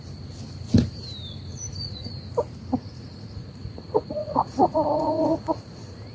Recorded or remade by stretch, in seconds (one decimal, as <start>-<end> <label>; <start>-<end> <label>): 0.0-1.5 recorded; 1.5-2.1 remade; 2.1-2.7 recorded; 2.7-6.1 remade